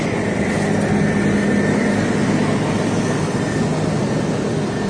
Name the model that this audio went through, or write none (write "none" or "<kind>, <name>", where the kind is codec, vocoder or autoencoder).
none